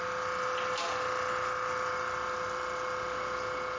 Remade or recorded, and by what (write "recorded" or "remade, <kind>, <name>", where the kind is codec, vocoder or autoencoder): recorded